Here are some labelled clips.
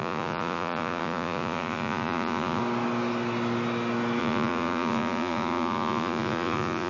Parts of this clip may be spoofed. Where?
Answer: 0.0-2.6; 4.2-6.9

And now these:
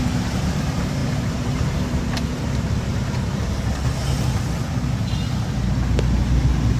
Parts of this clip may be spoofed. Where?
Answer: 0.0-4.0

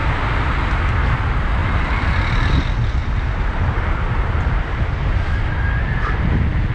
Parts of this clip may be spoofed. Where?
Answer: 1.6-2.6; 3.0-6.2

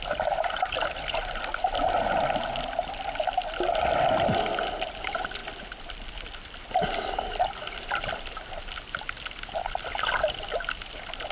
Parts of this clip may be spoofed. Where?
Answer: 5.4-6.6